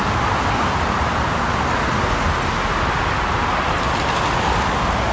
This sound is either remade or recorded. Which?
recorded